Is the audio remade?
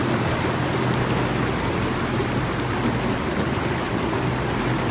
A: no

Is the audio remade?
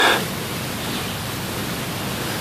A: no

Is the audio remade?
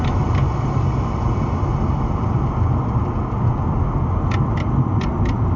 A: no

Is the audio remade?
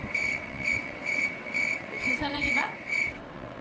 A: yes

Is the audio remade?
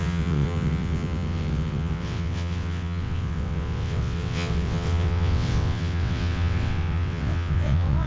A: yes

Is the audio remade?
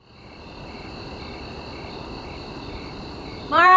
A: yes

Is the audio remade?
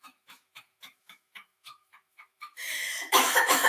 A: yes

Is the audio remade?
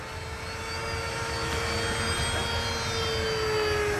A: no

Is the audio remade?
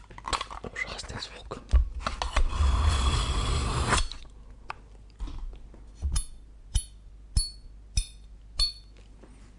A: no